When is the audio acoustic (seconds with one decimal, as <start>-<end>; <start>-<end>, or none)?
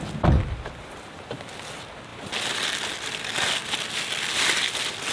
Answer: 0.0-5.1